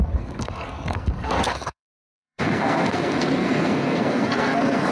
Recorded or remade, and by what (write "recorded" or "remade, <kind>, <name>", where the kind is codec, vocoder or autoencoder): remade, codec, SNAC